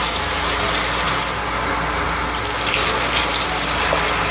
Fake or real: real